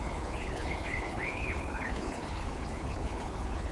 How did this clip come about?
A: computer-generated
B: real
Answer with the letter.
A